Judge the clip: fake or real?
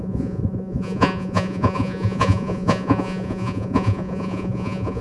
fake